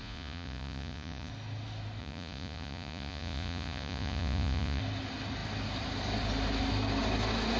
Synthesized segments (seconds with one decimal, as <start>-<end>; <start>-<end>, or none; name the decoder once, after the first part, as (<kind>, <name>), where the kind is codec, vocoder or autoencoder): 0.0-1.3 (vocoder, Vocos); 2.0-4.8